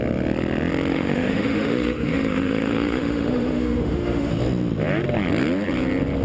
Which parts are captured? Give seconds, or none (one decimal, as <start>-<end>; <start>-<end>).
0.0-0.9; 4.3-6.2